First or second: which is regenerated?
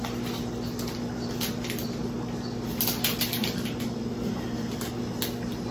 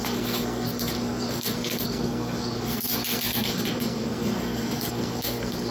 second